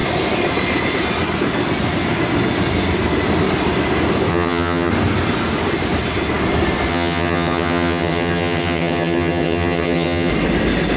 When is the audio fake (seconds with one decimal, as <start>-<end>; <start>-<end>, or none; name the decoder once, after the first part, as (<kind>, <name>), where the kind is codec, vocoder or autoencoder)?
4.3-4.9 (vocoder, HiFi-GAN); 6.9-10.3